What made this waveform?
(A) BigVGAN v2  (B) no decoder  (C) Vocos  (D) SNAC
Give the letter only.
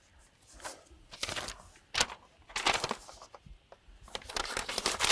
B